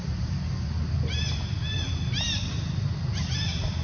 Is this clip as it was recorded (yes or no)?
yes